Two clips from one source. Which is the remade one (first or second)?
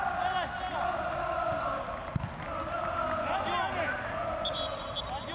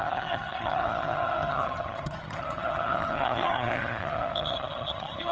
second